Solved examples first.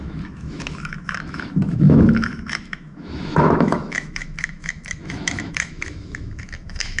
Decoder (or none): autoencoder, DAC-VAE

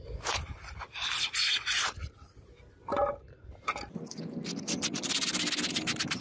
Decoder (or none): none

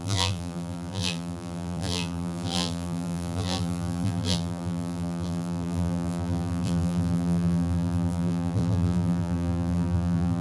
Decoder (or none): vocoder, BigVGAN v2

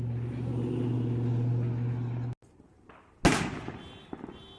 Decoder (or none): none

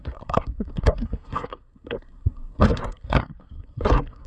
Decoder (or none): codec, SNAC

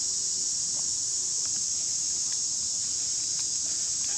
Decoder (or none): none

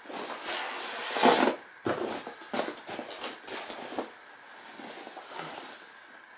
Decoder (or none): none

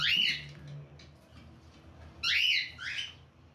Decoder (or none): none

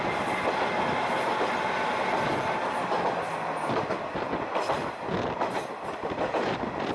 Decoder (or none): none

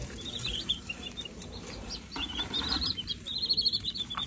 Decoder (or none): vocoder, BigVGAN v2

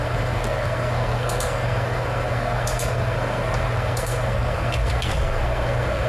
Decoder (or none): codec, SNAC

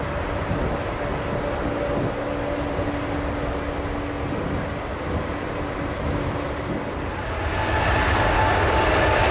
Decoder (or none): none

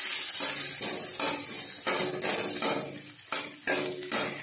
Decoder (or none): none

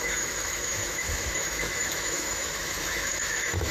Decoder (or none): autoencoder, DAC-VAE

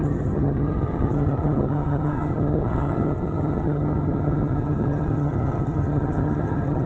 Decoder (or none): vocoder, HiFi-GAN